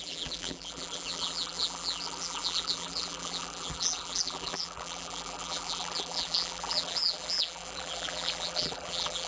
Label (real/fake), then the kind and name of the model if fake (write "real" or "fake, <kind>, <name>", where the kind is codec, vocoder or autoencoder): fake, vocoder, BigVGAN v2